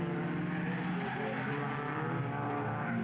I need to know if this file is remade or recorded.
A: recorded